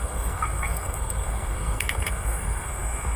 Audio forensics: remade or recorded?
remade